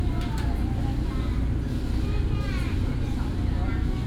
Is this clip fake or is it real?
real